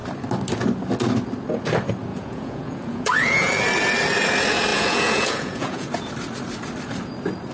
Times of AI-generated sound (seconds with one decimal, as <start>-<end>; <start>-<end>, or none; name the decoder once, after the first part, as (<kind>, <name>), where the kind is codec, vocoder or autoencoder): 2.1-3.5 (vocoder, Vocos); 4.7-6.1